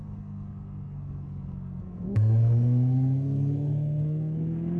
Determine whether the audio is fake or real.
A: fake